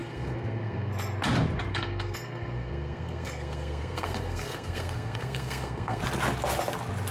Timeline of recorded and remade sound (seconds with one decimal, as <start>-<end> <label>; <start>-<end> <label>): 0.0-0.9 remade; 0.9-1.7 recorded; 1.7-6.0 remade; 6.0-7.1 recorded